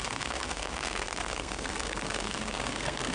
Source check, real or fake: fake